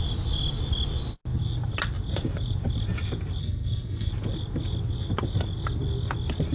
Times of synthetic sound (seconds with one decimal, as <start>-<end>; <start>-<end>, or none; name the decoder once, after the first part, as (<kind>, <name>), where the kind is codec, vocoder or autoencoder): 3.4-4.1 (codec, SNAC)